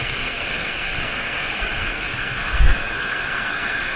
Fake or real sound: fake